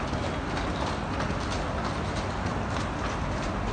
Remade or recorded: recorded